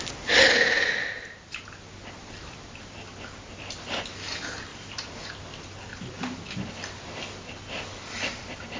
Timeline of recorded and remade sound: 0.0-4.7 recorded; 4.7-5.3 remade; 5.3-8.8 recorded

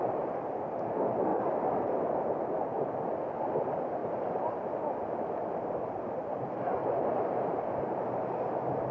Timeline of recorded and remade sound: 0.0-1.3 recorded; 1.3-2.3 remade; 2.3-4.0 recorded; 4.0-4.7 remade; 4.7-6.8 recorded; 6.8-8.5 remade; 8.5-8.9 recorded

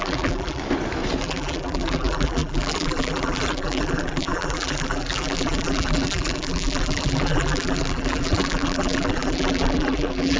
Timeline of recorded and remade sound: 0.0-0.6 remade; 0.6-1.2 recorded; 1.2-10.4 remade

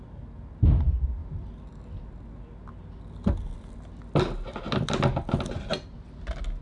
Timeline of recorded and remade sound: 0.0-6.6 recorded